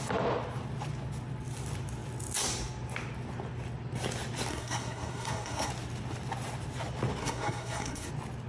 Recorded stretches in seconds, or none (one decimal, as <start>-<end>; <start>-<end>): 0.0-4.5; 5.7-7.2; 8.1-8.5